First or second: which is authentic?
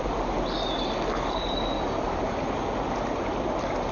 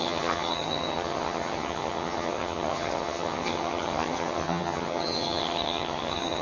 first